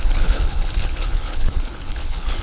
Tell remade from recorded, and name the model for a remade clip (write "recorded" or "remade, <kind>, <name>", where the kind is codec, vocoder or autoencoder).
remade, codec, HILCodec